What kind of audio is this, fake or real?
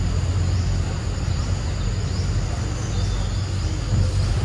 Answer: real